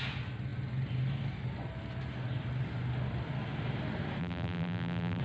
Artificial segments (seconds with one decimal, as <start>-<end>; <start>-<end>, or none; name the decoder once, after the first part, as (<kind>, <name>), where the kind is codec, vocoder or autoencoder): 4.2-5.2 (vocoder, BigVGAN v2)